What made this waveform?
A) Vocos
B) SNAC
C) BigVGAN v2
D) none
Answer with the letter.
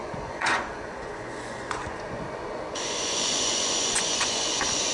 A